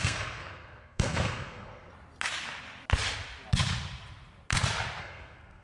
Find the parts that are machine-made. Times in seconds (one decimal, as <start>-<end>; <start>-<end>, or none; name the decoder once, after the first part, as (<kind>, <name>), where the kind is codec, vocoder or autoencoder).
0.0-1.9 (codec, SNAC); 5.0-5.6